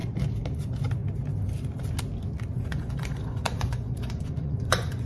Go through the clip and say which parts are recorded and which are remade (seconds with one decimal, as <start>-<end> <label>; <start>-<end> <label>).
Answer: 0.0-2.5 recorded; 2.5-5.1 remade